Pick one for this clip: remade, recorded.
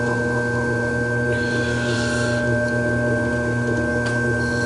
recorded